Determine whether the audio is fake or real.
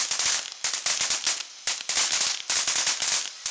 real